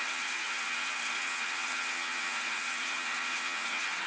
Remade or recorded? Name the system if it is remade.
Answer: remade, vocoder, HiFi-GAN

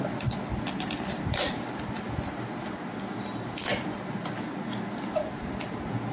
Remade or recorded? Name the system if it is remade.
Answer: recorded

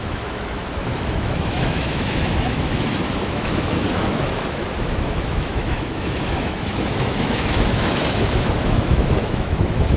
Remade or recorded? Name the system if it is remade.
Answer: remade, autoencoder, DAC-VAE